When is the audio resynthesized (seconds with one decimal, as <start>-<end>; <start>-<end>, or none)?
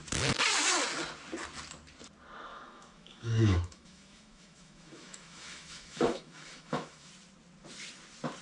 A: 2.5-7.1